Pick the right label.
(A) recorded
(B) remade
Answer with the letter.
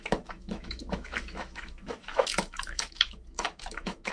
B